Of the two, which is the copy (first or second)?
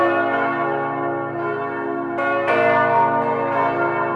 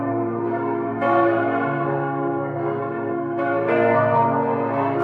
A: second